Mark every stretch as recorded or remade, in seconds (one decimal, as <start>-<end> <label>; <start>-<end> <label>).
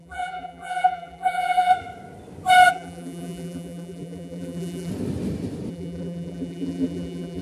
0.0-1.7 remade; 1.7-2.7 recorded; 2.7-4.9 remade; 4.9-5.7 recorded; 5.7-7.4 remade